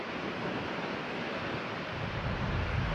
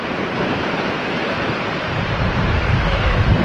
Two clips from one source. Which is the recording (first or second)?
first